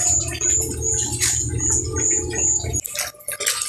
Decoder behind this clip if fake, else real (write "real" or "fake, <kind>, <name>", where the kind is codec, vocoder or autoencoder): real